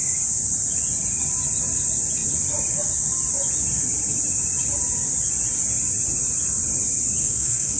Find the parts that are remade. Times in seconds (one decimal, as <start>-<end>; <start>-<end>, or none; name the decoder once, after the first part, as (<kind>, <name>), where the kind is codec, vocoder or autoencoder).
7.2-7.8 (codec, SNAC)